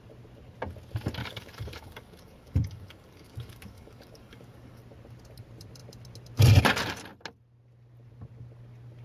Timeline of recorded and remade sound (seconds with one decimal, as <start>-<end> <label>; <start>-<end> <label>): 0.0-1.2 recorded; 1.2-4.8 remade; 4.8-9.0 recorded